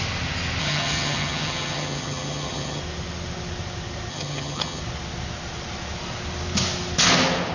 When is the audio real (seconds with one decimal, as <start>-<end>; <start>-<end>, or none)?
0.0-0.6; 2.8-4.1; 4.8-7.5